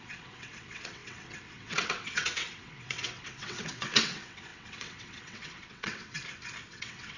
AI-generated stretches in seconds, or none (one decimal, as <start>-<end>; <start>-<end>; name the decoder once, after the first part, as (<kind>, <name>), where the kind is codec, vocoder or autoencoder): 0.0-6.2 (vocoder, WaveNeXt); 6.7-7.2